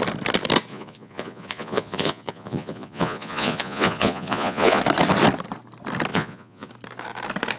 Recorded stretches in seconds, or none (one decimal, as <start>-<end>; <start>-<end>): 0.0-0.7; 4.8-6.1; 6.7-7.6